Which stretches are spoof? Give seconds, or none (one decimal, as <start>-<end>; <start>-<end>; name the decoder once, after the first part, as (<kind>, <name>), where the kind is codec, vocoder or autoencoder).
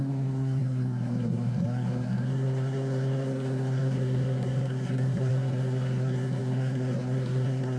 0.0-7.8 (codec, SNAC)